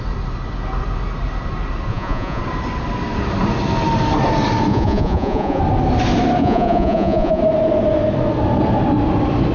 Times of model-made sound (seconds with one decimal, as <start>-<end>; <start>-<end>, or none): 1.9-2.4; 4.7-5.6; 6.4-7.4